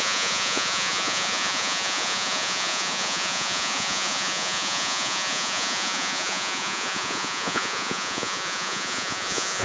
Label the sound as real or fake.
fake